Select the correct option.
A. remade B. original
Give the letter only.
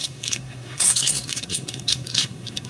A